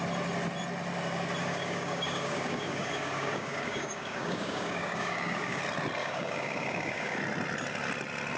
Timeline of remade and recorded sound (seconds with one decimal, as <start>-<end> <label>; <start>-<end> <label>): 0.0-1.4 recorded; 1.4-5.6 remade; 5.6-6.0 recorded; 6.0-7.2 remade; 7.2-8.4 recorded